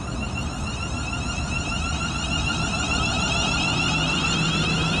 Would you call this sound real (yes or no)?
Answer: yes